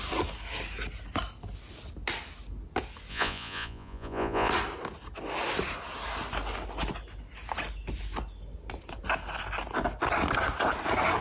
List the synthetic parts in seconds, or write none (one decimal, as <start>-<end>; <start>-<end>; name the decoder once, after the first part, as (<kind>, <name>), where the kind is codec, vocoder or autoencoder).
3.1-4.5 (vocoder, Vocos)